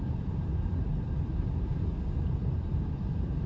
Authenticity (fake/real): fake